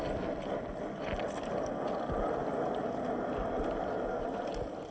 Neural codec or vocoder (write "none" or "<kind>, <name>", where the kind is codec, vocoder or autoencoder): none